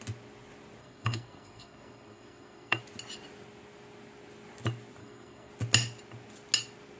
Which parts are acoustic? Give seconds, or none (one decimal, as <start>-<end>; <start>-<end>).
0.0-0.8; 2.8-5.0; 5.5-7.0